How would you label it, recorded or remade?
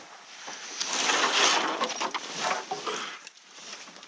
recorded